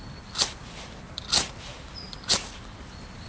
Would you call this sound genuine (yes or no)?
no